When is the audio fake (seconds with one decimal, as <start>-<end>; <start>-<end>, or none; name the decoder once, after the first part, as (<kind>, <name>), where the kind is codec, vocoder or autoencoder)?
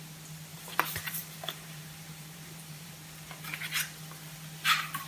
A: 0.5-2.9 (vocoder, BigVGAN v2)